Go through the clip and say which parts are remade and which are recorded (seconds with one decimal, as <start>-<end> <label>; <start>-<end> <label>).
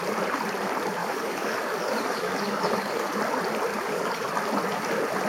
0.0-1.0 recorded; 1.0-3.2 remade; 3.2-3.7 recorded; 3.7-4.3 remade; 4.3-5.3 recorded